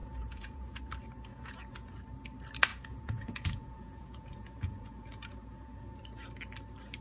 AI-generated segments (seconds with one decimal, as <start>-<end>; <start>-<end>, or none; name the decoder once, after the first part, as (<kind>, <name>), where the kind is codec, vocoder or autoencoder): 0.0-0.8 (vocoder, Vocos); 1.3-2.0; 2.7-6.0